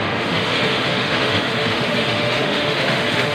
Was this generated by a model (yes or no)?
yes